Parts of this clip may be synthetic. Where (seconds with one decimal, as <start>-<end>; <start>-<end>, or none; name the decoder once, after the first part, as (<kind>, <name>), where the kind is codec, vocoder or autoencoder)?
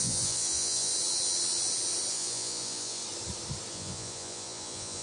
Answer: 0.0-0.9 (vocoder, Vocos); 2.1-3.0; 3.7-5.0